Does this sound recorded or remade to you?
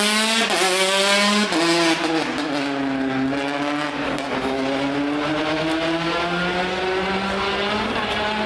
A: recorded